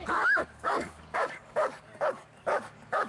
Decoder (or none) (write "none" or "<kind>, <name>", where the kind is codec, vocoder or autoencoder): codec, DAC